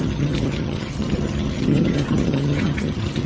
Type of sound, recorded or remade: remade